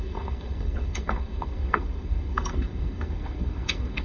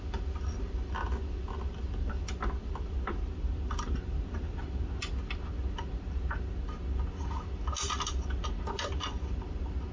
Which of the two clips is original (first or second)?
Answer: second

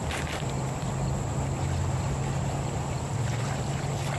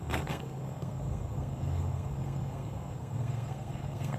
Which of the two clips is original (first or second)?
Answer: first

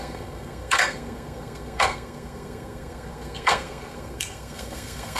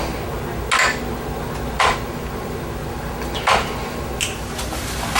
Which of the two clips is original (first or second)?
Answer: second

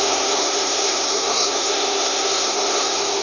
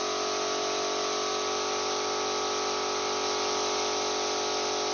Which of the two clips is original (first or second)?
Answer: second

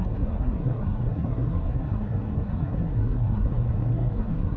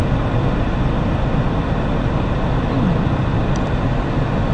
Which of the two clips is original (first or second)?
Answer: second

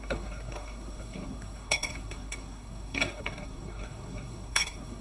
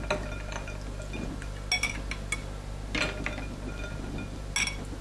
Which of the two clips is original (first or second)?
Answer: second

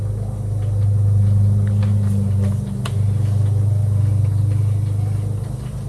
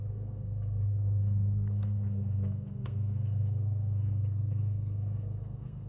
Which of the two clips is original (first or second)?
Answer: first